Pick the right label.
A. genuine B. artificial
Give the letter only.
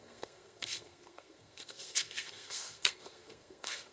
B